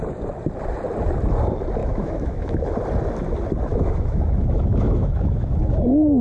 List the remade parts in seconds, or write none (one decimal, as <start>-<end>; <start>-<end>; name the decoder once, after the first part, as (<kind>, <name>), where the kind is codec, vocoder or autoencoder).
1.8-2.7 (autoencoder, DAC-VAE); 3.7-5.8